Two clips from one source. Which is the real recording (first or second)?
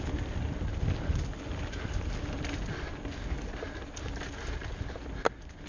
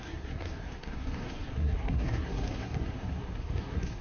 first